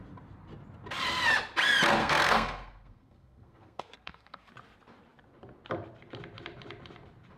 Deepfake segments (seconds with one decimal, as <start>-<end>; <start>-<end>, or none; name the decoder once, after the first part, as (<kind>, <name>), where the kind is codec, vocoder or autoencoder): 2.0-4.5 (codec, SNAC)